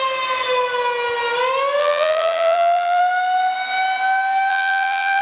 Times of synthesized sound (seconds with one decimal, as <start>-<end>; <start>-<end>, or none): 1.8-3.0; 4.5-5.2